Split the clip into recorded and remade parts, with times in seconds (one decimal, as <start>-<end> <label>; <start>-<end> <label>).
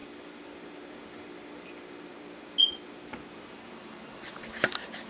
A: 0.0-5.1 recorded